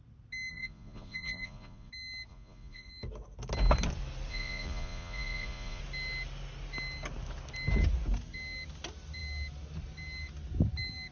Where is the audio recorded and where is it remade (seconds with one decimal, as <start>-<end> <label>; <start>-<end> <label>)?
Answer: 0.0-0.5 recorded; 0.5-1.9 remade; 1.9-2.3 recorded; 2.3-2.9 remade; 2.9-4.3 recorded; 4.3-5.8 remade; 5.8-11.1 recorded